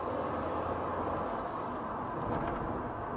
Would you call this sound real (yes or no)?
yes